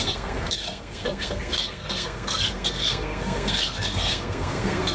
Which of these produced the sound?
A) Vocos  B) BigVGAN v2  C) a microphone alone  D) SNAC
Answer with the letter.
D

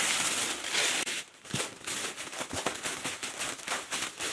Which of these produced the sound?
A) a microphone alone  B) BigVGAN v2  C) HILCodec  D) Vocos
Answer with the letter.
A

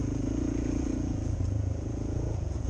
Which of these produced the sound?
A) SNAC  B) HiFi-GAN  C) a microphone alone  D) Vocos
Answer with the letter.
D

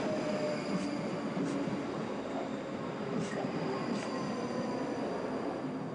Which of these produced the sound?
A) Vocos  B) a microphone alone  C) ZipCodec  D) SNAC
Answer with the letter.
B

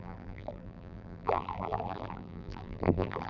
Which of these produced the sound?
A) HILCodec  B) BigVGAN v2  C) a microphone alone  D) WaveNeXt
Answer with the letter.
B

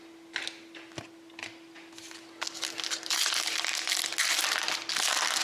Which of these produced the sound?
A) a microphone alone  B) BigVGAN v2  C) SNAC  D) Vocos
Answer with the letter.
A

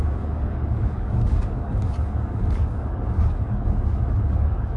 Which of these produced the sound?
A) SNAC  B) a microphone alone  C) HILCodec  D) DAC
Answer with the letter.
D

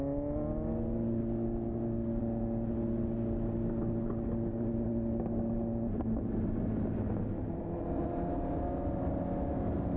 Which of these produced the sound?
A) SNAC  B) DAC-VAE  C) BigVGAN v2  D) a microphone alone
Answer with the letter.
D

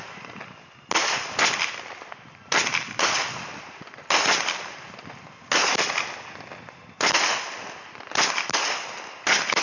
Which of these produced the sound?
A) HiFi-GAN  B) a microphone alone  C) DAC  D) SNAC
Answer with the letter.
B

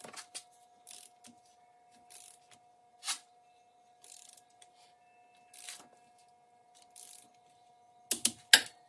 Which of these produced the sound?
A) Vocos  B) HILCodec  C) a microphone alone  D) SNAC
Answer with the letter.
C